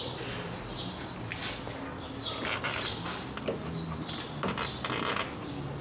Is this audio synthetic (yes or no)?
no